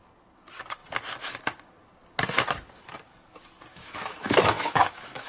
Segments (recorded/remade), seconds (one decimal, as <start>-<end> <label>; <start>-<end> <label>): 0.0-3.7 recorded; 3.7-5.3 remade